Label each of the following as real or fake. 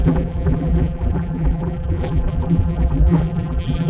fake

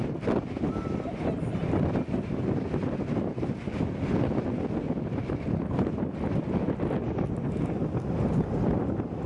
real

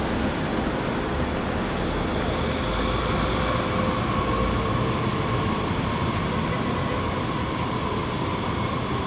real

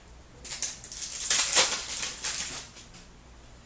real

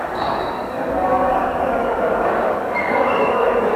fake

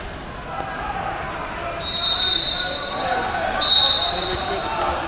real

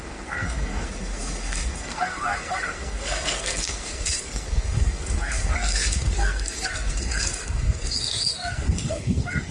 fake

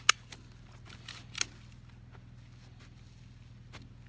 real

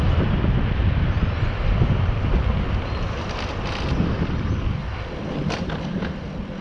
real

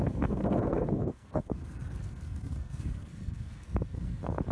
fake